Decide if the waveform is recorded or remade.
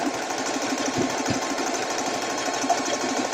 recorded